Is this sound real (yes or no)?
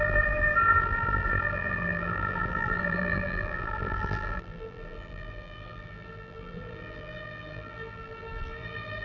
no